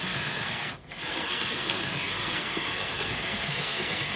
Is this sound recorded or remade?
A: remade